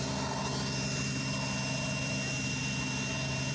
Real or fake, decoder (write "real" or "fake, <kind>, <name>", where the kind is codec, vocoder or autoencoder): real